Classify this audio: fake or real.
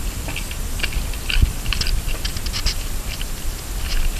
real